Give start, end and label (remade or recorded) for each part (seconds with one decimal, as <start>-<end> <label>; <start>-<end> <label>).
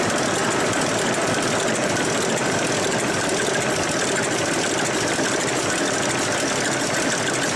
0.0-7.6 remade